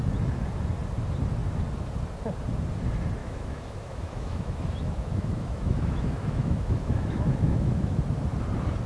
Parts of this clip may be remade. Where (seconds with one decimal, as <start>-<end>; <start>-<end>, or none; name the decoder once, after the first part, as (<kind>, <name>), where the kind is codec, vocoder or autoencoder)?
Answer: 3.2-8.0 (autoencoder, DAC-VAE)